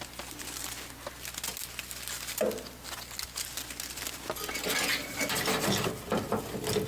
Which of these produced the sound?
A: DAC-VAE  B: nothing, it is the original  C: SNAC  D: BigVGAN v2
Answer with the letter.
B